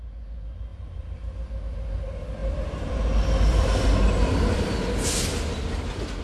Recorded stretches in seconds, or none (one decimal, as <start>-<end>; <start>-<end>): 0.0-0.7; 1.5-2.4